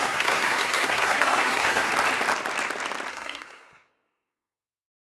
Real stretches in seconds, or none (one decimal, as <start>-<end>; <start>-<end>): 1.9-3.1